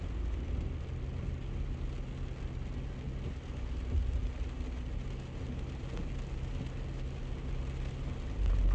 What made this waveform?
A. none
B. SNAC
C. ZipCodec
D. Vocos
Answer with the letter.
A